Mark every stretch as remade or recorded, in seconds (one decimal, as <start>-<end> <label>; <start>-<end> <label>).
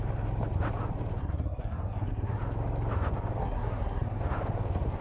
0.0-1.2 recorded; 1.2-2.4 remade; 2.4-3.4 recorded; 3.4-4.2 remade; 4.2-5.0 recorded